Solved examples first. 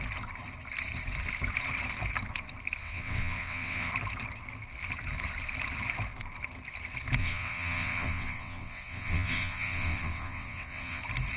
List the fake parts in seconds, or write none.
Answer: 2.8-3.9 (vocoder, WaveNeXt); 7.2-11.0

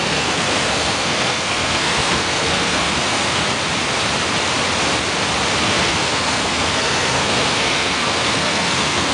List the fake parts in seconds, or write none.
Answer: 0.0-3.4 (codec, SNAC); 5.6-9.1

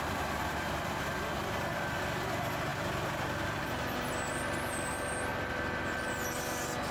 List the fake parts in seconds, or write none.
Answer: 2.7-3.6 (vocoder, BigVGAN v2); 5.3-6.1